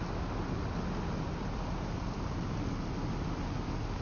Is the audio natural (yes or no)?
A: yes